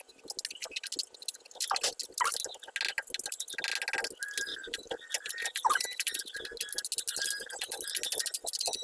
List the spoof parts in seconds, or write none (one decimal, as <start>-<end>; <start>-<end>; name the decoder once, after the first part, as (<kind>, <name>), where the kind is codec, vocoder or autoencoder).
4.5-6.2 (vocoder, BigVGAN v2)